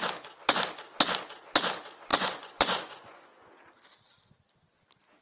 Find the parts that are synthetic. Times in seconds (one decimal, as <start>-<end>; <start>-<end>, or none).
2.1-3.5

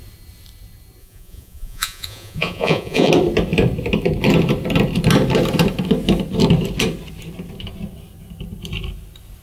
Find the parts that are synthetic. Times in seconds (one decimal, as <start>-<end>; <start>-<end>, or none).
1.0-3.1

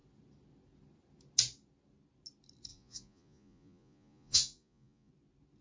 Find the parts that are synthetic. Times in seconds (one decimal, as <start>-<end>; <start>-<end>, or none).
2.7-5.1

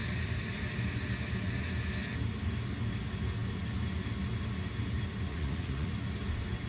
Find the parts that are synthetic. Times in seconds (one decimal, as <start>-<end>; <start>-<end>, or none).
5.3-5.9

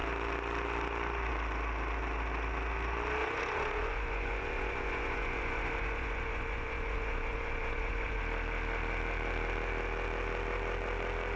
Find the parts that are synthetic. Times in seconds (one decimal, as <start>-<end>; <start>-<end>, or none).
3.2-8.2

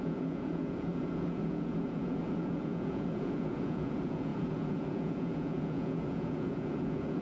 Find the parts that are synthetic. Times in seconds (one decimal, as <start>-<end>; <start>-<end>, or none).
0.0-7.2

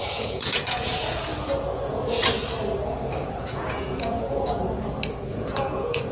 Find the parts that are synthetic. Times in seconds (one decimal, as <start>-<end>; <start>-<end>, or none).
0.0-1.3; 3.3-4.6; 5.3-6.1

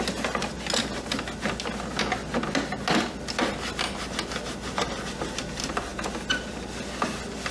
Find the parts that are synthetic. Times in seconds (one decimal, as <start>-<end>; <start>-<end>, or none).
none